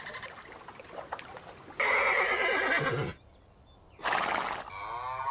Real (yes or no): yes